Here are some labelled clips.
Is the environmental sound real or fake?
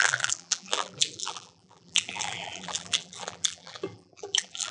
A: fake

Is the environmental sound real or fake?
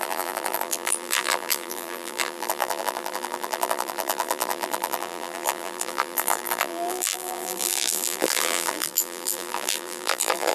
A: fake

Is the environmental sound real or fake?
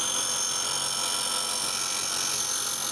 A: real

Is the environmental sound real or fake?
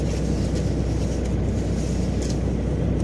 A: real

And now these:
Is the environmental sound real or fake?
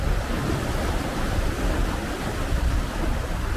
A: fake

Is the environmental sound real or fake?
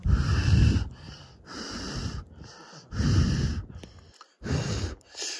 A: real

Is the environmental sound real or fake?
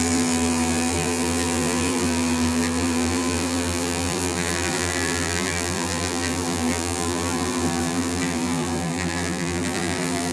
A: fake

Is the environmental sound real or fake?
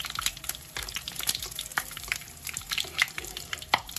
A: fake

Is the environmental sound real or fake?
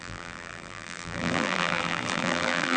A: fake